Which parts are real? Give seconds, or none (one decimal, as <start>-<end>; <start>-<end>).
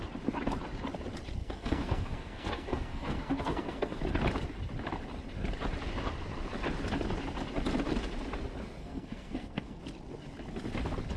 0.0-1.4; 4.0-8.8; 9.8-11.2